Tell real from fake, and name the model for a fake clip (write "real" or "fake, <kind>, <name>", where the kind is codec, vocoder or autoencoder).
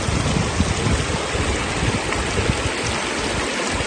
real